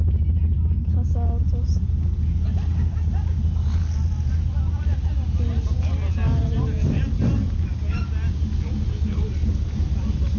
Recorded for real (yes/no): yes